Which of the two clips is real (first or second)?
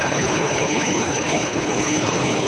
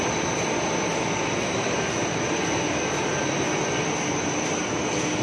second